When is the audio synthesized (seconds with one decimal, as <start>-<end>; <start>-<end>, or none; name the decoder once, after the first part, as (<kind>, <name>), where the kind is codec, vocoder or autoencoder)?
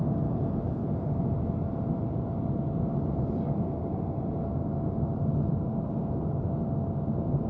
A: none